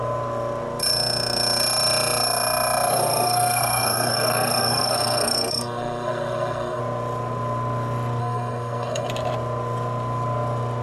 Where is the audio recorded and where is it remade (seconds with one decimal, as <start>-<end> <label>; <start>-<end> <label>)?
0.0-2.9 recorded; 2.9-6.8 remade; 6.8-8.2 recorded; 8.2-9.1 remade; 9.1-10.8 recorded